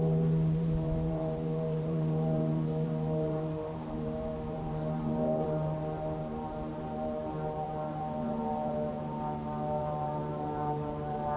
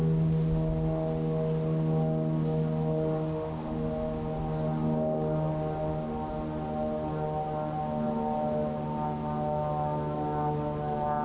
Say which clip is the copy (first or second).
first